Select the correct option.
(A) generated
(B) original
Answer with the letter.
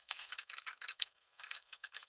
A